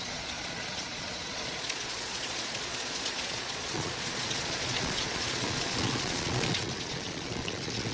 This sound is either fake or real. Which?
fake